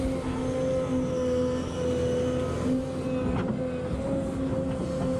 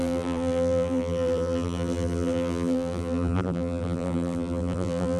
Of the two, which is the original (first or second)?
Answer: first